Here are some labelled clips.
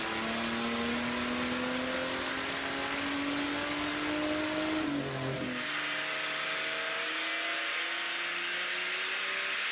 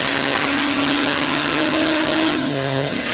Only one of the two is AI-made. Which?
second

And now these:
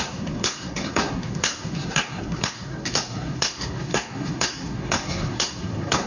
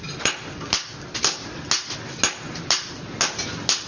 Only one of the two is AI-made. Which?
first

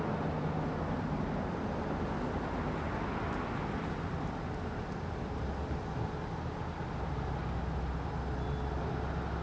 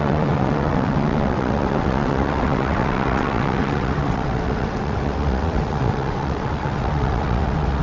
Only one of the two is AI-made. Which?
second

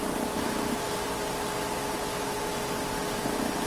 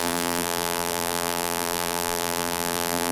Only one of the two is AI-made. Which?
second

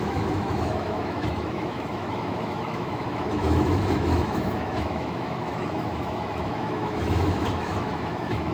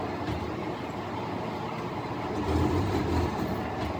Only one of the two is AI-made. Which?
first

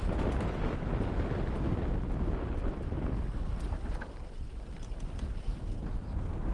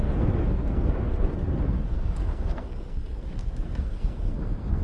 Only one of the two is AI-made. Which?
second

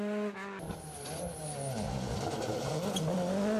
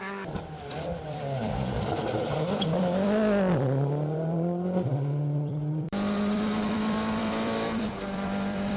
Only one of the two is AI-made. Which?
second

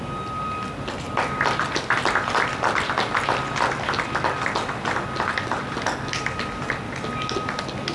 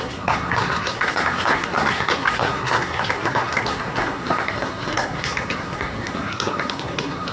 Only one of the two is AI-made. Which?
second